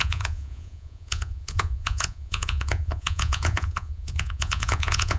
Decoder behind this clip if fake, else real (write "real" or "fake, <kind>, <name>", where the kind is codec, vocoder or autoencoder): fake, vocoder, Vocos